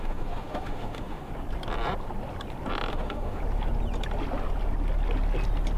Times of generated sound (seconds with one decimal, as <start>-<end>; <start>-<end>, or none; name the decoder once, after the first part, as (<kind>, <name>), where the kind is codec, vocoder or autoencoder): 0.0-1.3 (autoencoder, DAC-VAE); 2.9-3.4